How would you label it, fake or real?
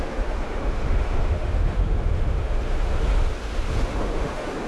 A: fake